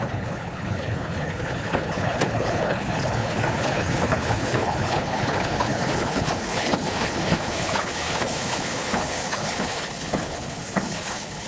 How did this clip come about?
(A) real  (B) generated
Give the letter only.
B